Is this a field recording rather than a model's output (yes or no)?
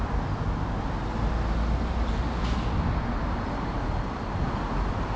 yes